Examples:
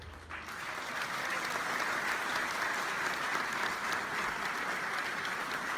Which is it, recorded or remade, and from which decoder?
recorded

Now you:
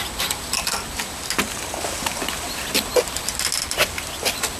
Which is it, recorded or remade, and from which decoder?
recorded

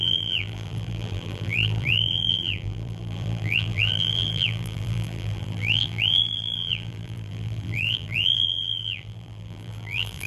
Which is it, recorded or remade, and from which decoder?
remade, vocoder, BigVGAN v2